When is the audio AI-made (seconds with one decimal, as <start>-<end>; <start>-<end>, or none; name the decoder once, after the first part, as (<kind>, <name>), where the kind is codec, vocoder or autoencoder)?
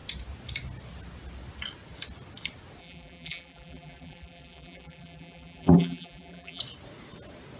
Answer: 2.8-6.6 (vocoder, BigVGAN v2)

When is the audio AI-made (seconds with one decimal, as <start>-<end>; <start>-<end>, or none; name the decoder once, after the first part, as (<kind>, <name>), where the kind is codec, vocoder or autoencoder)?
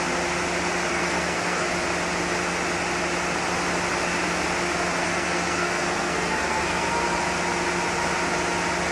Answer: 0.9-1.7 (codec, SNAC); 5.0-7.2